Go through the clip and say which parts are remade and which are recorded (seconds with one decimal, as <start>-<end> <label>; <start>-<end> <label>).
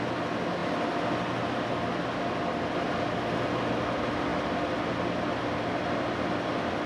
0.0-6.9 recorded